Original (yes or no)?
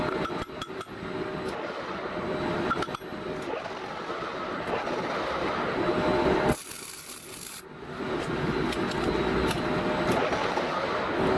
yes